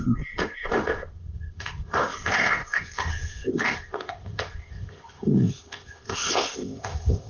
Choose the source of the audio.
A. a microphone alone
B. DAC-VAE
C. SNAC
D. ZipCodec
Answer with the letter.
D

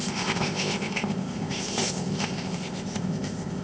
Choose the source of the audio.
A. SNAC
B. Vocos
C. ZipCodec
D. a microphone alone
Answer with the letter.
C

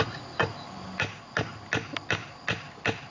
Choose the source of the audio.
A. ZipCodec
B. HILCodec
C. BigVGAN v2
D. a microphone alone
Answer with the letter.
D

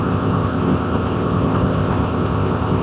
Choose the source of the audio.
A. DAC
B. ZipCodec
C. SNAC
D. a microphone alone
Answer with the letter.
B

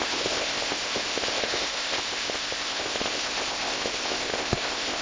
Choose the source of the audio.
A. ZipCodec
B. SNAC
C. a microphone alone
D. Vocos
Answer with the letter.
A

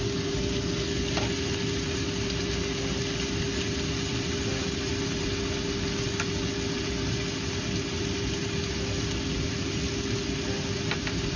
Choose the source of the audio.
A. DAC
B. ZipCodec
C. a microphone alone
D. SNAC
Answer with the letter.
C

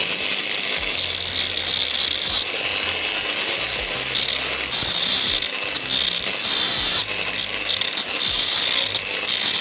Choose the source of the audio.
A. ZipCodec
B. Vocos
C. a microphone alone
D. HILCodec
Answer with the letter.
C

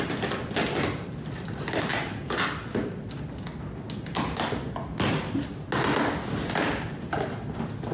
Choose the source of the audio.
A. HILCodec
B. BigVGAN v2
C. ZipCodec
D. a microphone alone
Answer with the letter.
D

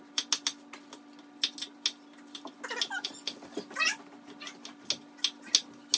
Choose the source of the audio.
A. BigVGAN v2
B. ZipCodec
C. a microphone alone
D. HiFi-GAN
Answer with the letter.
C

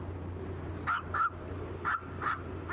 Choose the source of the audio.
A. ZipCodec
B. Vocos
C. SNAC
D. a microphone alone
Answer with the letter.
D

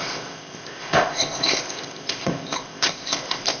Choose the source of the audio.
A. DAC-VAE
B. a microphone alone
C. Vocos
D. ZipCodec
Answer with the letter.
D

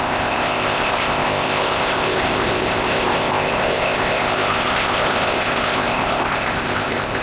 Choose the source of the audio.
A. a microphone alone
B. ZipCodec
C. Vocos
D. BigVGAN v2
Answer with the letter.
B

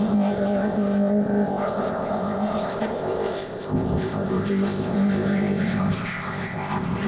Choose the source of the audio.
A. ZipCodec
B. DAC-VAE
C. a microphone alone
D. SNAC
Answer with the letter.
A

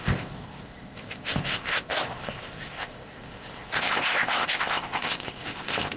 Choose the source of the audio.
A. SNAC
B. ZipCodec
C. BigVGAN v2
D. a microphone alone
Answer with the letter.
B